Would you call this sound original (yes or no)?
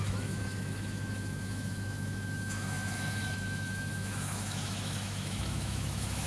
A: no